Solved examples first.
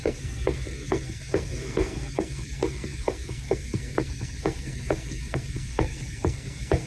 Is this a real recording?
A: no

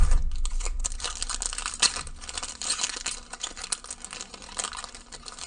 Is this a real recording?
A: yes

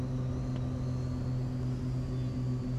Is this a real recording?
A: yes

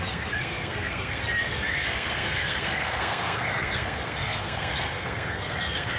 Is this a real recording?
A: no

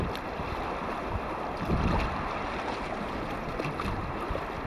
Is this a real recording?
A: yes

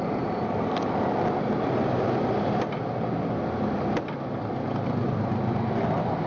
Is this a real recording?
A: yes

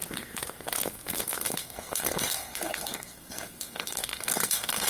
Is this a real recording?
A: no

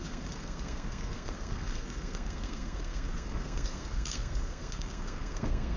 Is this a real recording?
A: no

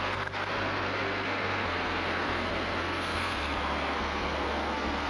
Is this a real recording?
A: no